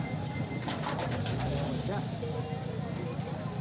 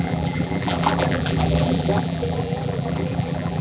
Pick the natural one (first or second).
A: first